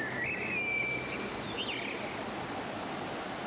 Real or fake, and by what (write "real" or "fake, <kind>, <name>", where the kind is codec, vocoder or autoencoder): real